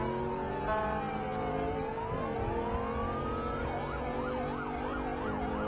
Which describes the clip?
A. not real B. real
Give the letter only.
B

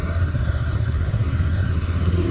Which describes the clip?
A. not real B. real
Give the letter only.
A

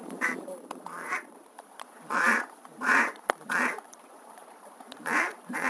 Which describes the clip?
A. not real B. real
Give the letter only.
A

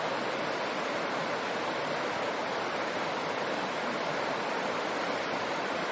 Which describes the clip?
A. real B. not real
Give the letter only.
A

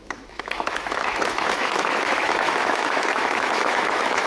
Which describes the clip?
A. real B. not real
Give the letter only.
B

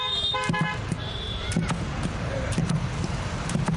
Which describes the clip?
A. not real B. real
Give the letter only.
A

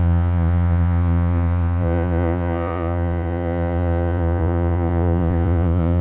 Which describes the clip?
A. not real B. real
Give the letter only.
A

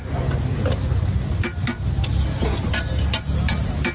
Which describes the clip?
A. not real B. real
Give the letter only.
B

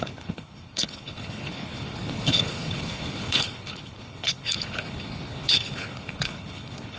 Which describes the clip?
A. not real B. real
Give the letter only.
A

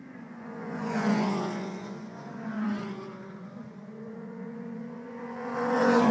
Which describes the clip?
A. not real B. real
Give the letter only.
A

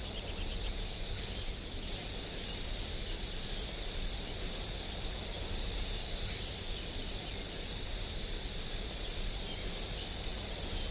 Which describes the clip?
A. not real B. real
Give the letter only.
B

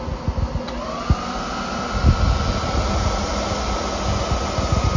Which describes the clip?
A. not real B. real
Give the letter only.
B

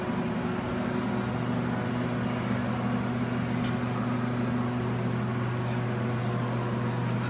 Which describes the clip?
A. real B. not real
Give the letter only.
A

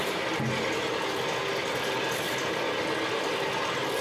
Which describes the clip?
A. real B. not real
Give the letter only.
A